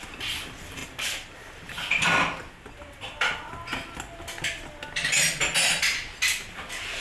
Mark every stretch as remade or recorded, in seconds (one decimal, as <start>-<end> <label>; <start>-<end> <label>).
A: 0.0-7.0 recorded